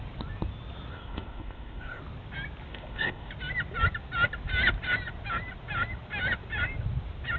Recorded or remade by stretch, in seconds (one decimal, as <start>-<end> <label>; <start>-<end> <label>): 0.0-0.9 recorded; 0.9-2.0 remade; 2.0-2.7 recorded; 2.7-3.3 remade; 3.3-7.4 recorded